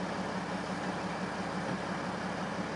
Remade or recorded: recorded